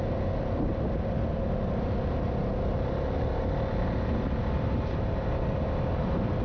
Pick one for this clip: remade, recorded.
recorded